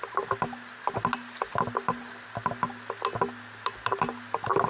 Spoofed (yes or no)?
no